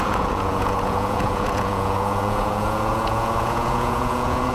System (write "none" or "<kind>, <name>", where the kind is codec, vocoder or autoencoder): vocoder, Vocos